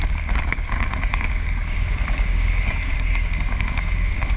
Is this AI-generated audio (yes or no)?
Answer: yes